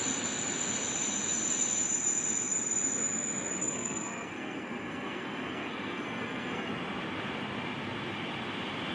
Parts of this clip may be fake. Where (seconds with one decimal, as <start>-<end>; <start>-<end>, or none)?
3.6-6.7